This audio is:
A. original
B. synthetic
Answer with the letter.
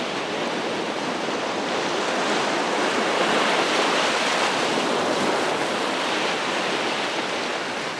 A